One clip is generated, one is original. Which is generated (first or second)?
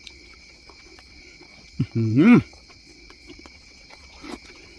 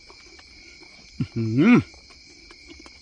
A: first